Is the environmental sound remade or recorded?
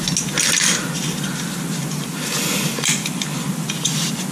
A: recorded